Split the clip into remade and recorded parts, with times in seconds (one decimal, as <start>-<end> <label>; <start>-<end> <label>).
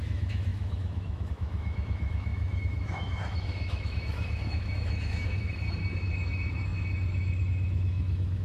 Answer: 0.0-8.4 remade